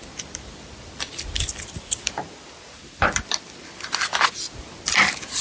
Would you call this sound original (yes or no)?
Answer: no